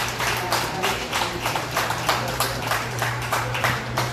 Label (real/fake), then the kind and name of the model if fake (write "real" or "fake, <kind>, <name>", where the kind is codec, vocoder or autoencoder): fake, vocoder, BigVGAN v2